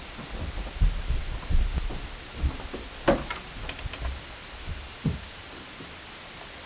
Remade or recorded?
recorded